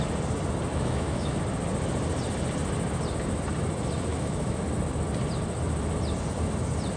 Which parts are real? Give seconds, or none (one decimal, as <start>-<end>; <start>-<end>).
0.0-0.7; 1.4-4.1; 4.6-7.0